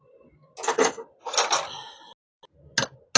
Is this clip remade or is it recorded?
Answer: recorded